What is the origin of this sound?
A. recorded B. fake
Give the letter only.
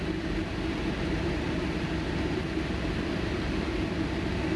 A